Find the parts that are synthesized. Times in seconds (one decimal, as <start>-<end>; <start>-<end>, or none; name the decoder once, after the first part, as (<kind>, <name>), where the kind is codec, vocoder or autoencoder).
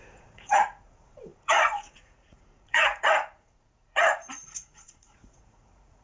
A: 0.0-6.0 (vocoder, Vocos)